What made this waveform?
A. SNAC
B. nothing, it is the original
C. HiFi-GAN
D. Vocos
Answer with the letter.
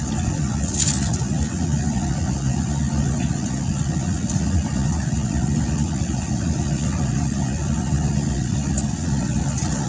D